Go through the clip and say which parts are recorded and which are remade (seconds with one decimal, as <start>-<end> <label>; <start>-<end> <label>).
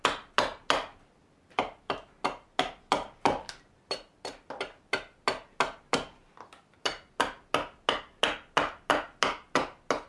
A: 0.0-10.1 recorded